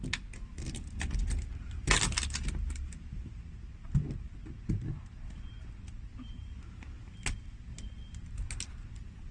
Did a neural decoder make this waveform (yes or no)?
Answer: no